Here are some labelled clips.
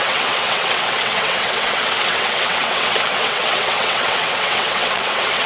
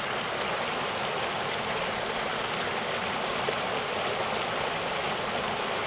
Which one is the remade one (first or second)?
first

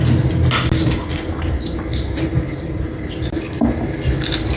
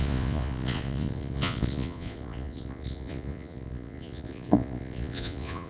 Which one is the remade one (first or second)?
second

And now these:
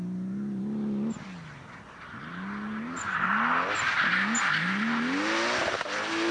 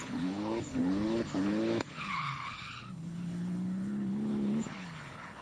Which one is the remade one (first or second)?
second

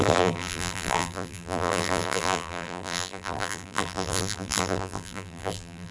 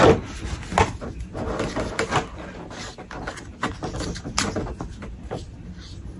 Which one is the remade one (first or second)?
first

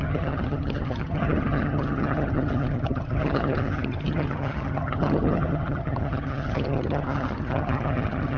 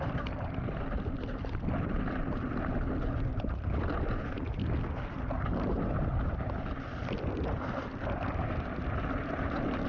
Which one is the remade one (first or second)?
first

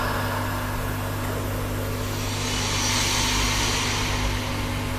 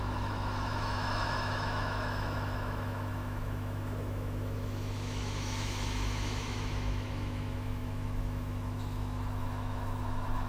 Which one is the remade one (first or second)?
second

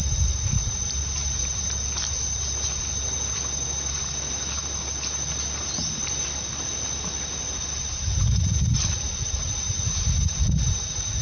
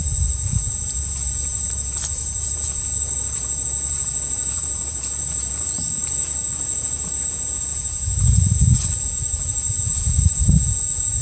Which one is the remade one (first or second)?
second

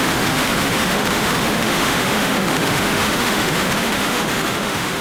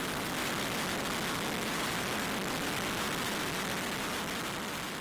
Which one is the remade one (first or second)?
first